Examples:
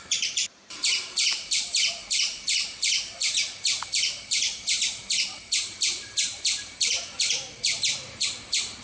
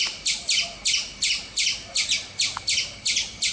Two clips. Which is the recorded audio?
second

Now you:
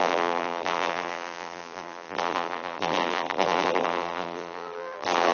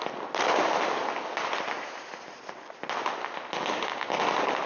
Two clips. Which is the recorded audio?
second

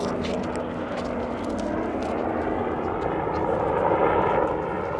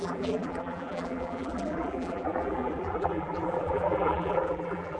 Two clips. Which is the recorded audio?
first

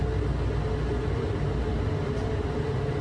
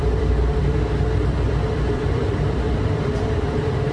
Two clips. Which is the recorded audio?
first